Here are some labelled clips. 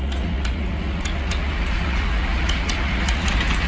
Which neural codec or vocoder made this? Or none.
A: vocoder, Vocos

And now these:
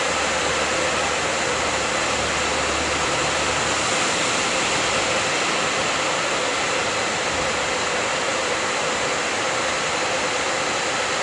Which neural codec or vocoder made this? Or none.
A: none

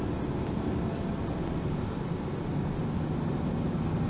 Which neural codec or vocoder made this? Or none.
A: none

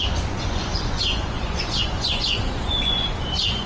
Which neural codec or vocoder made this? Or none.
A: vocoder, Vocos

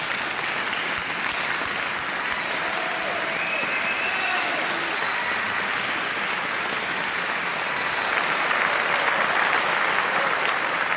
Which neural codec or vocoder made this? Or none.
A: none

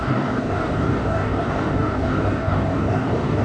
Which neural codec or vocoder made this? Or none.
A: codec, DAC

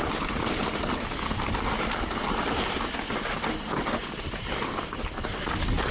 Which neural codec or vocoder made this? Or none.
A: none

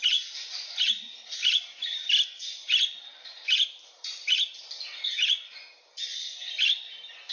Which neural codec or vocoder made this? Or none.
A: none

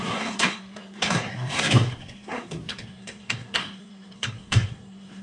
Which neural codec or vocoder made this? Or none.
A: codec, SNAC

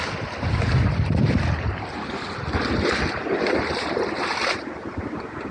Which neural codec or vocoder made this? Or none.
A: none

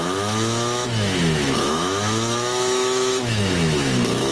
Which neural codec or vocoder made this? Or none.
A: autoencoder, DAC-VAE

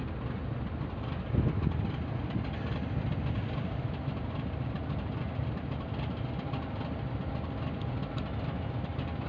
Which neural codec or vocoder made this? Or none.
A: none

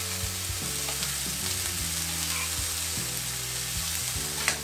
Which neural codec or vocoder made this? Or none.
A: none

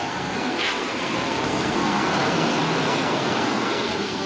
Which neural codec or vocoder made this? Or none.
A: codec, SNAC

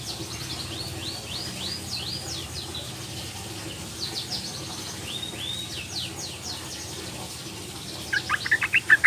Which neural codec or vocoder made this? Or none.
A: none